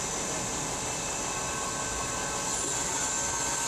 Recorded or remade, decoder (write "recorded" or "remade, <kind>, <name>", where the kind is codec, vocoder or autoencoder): recorded